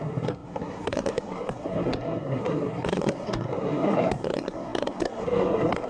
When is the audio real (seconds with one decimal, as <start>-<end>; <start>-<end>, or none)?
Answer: none